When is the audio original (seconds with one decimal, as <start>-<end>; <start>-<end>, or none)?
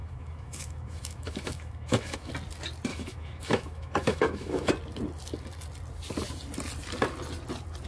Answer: 2.3-2.9; 4.7-7.9